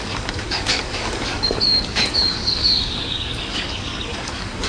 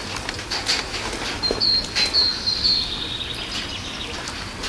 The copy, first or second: first